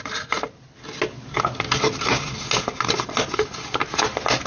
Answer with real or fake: real